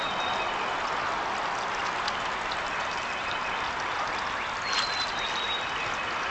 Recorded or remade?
recorded